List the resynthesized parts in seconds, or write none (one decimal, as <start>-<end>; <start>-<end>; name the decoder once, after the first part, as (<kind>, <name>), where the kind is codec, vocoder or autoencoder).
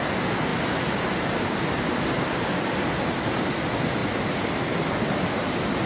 none